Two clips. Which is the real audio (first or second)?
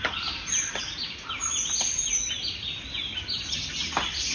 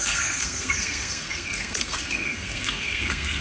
first